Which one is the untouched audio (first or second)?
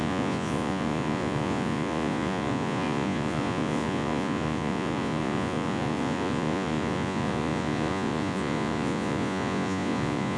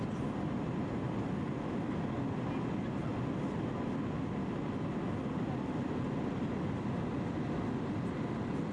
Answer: second